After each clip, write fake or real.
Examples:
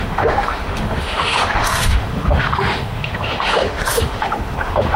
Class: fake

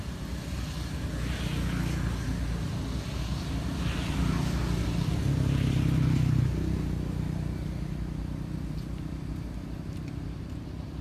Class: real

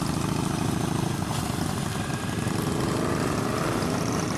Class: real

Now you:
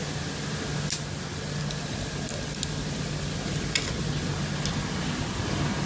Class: real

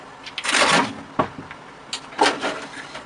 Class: real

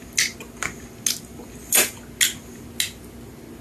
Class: real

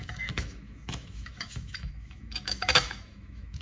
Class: fake